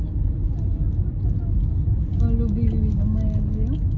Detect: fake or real real